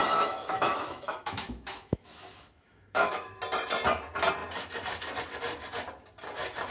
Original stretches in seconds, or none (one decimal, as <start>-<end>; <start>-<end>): 3.4-6.7